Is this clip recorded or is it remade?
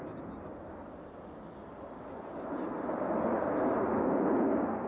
recorded